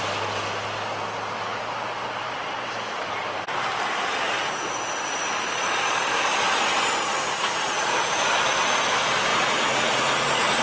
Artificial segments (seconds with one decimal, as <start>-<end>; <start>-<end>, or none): 7.1-7.9; 9.3-10.6